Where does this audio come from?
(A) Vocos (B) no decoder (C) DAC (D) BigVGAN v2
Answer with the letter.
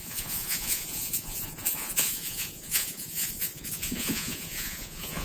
A